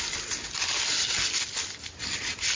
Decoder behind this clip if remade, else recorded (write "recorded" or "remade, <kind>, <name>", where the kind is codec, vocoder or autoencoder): recorded